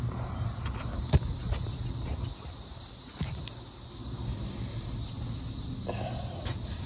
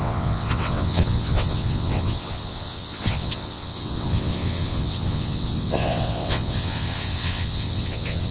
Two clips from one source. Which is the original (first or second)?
first